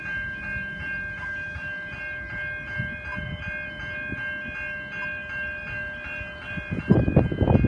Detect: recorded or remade recorded